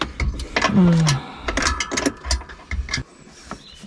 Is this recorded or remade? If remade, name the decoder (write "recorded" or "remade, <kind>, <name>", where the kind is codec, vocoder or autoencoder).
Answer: recorded